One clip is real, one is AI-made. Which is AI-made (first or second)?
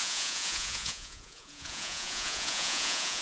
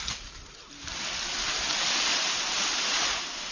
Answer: first